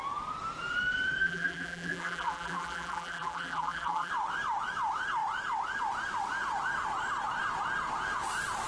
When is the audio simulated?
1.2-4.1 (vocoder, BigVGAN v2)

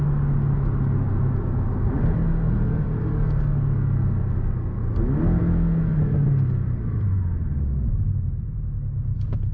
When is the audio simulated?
5.9-7.1 (vocoder, BigVGAN v2)

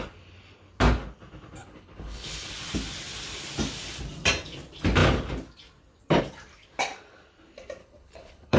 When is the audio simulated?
1.6-2.5 (codec, HILCodec); 7.8-8.6

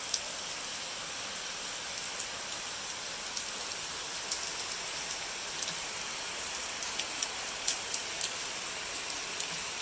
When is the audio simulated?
none